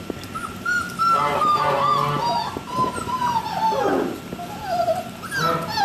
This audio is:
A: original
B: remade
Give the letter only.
A